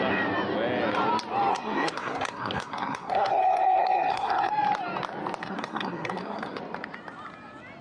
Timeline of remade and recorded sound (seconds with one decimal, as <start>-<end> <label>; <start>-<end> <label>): 0.0-1.5 recorded; 1.5-4.5 remade; 4.5-5.4 recorded; 5.4-6.6 remade; 6.6-7.8 recorded